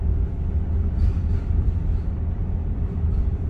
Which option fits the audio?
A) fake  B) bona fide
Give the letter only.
B